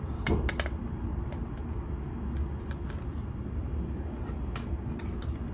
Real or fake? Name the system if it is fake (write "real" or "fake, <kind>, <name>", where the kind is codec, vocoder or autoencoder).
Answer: real